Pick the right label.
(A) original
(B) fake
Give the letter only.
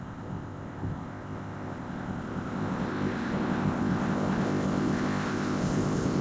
B